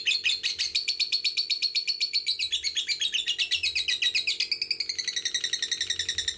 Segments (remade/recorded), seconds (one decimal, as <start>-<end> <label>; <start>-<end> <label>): 0.0-6.4 recorded